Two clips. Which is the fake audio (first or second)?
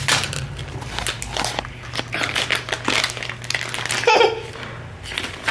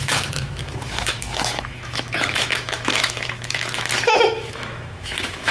second